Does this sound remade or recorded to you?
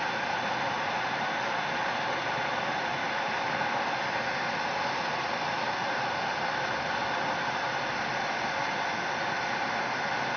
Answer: recorded